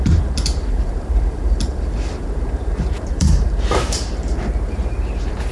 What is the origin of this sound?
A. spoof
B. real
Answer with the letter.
A